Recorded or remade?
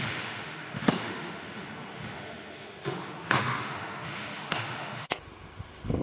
remade